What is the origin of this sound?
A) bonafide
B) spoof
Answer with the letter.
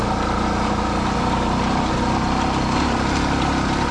A